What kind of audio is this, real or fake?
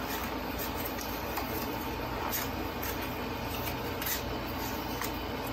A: real